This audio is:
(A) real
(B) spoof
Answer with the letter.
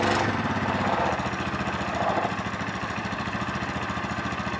A